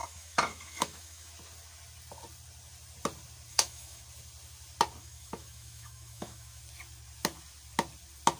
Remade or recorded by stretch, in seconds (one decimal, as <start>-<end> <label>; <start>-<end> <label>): 0.0-1.3 remade; 1.3-3.5 recorded; 3.5-4.0 remade; 4.0-5.0 recorded; 5.0-6.6 remade; 6.6-8.4 recorded